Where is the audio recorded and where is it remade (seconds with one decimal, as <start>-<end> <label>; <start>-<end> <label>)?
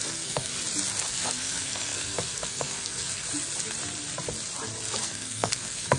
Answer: 0.0-0.5 remade; 0.5-1.1 recorded; 1.1-3.2 remade; 3.2-5.0 recorded; 5.0-6.0 remade